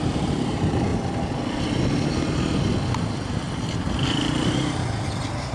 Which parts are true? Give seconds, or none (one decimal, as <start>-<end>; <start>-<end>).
0.9-4.2